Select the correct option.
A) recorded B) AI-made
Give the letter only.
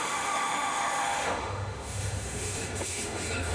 B